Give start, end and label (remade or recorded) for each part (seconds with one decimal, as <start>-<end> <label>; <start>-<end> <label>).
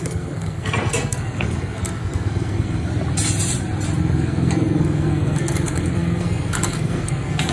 0.0-2.9 remade; 2.9-4.0 recorded; 4.0-7.5 remade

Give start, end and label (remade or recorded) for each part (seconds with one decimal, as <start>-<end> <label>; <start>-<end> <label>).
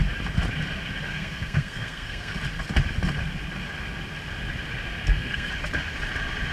0.0-1.1 recorded; 1.1-2.4 remade; 2.4-5.0 recorded; 5.0-5.5 remade; 5.5-6.5 recorded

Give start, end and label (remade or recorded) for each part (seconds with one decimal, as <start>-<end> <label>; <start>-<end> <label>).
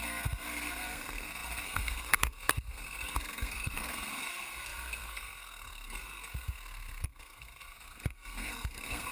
0.0-9.1 remade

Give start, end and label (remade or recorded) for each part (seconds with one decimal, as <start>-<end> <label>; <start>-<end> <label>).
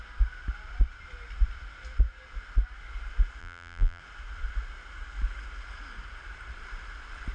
0.0-3.4 recorded; 3.4-4.0 remade; 4.0-7.3 recorded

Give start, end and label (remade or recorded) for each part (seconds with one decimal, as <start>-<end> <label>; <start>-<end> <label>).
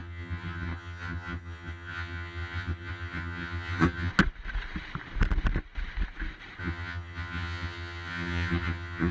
0.0-4.1 remade; 4.1-6.6 recorded; 6.6-9.1 remade